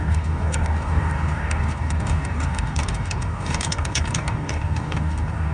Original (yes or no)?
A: no